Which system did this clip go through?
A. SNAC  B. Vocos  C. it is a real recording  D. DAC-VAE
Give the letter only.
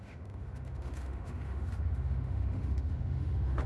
D